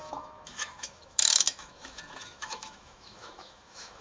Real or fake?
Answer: fake